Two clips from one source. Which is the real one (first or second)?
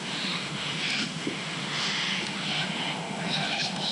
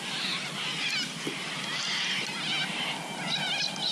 second